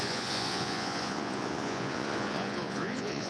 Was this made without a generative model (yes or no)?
no